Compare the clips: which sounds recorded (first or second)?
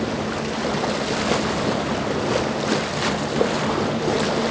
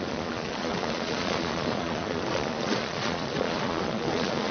first